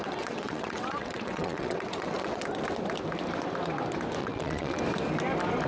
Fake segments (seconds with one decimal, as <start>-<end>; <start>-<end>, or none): 0.0-2.4; 4.2-4.8